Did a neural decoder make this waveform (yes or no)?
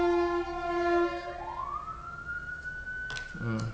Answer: no